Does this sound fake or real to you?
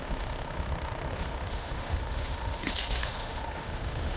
fake